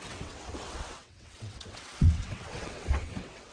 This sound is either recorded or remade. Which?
remade